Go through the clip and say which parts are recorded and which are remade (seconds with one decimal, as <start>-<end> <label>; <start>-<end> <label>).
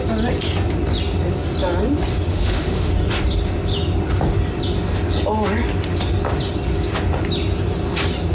0.0-2.3 recorded; 2.3-2.9 remade; 2.9-8.3 recorded